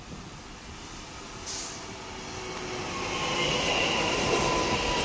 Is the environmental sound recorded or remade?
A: recorded